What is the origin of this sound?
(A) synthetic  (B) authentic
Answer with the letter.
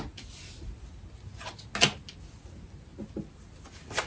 B